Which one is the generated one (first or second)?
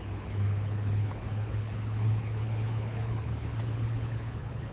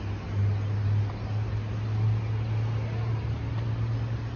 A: first